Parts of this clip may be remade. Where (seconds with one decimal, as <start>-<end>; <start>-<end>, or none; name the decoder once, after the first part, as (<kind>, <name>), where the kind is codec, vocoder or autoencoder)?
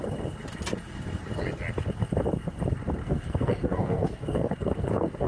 3.0-5.3 (codec, SNAC)